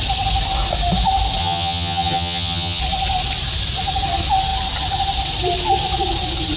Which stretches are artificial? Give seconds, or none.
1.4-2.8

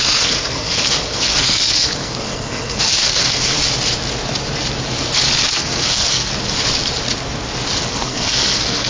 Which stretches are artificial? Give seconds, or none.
0.0-3.6; 5.5-6.3; 7.9-8.9

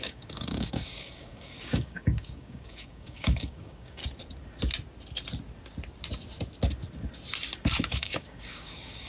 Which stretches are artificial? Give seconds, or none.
0.0-4.0; 7.9-9.1

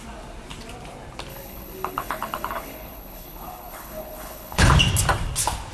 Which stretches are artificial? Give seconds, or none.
1.3-4.7